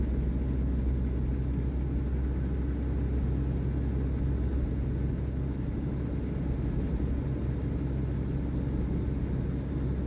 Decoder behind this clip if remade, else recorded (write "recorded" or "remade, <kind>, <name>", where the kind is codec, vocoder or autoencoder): recorded